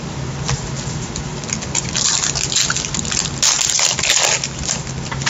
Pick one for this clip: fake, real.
real